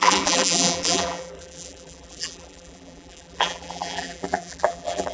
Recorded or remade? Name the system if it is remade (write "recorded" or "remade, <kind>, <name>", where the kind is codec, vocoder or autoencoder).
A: remade, vocoder, BigVGAN v2